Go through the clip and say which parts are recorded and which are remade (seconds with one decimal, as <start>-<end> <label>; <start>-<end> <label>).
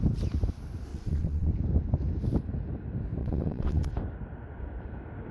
0.0-0.9 recorded; 0.9-1.5 remade; 1.5-3.2 recorded; 3.2-3.9 remade; 3.9-5.3 recorded